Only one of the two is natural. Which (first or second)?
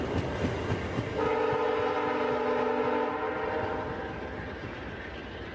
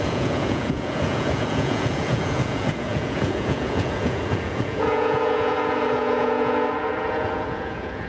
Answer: first